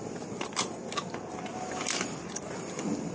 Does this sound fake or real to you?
fake